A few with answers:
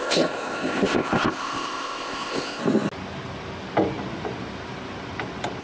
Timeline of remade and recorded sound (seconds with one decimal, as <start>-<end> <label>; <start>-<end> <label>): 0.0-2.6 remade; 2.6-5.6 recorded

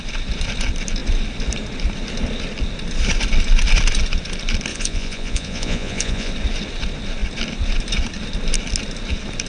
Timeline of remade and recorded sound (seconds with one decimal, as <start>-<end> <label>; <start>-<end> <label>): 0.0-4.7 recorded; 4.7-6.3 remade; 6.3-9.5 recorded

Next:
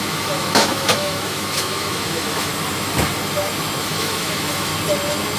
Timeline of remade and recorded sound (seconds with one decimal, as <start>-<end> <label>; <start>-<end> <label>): 0.0-2.5 remade; 2.5-3.8 recorded; 3.8-4.7 remade; 4.7-5.4 recorded

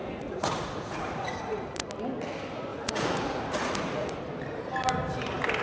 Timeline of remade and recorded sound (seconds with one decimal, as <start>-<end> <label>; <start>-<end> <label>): 0.0-1.8 remade; 1.8-2.7 recorded; 2.7-4.2 remade; 4.2-5.6 recorded